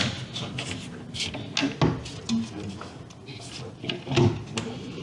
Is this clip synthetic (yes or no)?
no